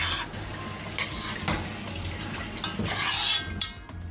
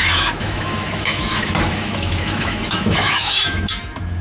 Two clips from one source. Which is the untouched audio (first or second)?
first